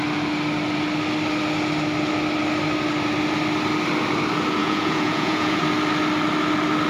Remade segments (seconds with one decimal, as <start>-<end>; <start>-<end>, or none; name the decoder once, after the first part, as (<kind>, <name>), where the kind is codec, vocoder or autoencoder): 4.6-5.6 (vocoder, Vocos)